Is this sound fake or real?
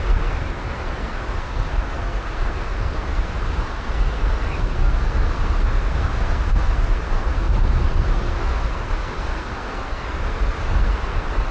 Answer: fake